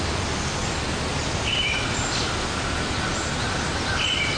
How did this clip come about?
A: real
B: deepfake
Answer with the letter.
A